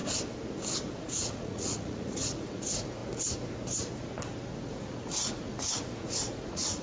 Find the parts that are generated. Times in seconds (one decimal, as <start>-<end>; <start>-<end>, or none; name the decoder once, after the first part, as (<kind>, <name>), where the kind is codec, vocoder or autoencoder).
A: 1.0-3.0 (vocoder, Vocos); 4.6-6.8